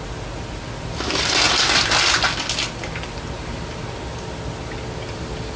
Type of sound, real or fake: real